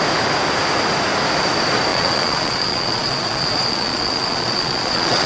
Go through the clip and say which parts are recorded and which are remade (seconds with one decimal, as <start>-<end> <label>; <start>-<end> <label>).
0.0-1.9 recorded; 1.9-5.3 remade